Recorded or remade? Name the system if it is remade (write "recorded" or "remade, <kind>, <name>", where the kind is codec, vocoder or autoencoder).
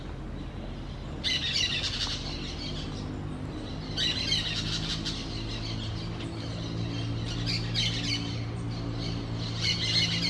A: recorded